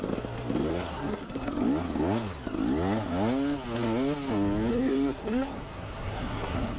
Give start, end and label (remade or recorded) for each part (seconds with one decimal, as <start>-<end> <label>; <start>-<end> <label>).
0.0-0.7 recorded; 0.7-1.5 remade; 1.5-4.7 recorded; 4.7-6.8 remade